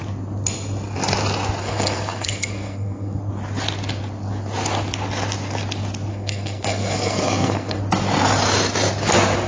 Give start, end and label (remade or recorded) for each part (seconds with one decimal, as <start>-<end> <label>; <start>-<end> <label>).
0.0-1.6 recorded; 1.6-3.2 remade; 3.2-6.1 recorded; 6.1-7.8 remade; 7.8-9.5 recorded